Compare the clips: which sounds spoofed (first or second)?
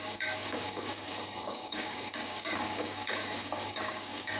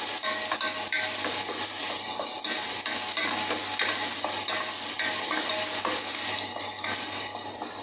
first